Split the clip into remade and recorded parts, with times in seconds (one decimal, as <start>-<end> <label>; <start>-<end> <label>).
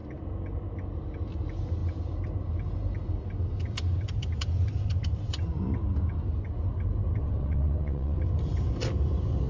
0.0-7.2 recorded; 7.2-8.2 remade; 8.2-9.5 recorded